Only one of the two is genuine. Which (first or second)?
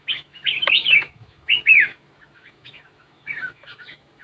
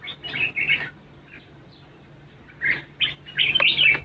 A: second